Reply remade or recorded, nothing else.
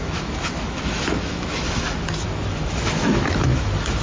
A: remade